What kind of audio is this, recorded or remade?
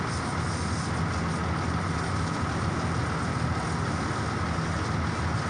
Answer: recorded